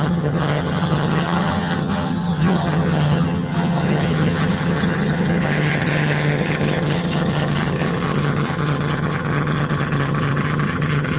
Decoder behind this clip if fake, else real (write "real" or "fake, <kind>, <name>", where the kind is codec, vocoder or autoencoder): fake, vocoder, HiFi-GAN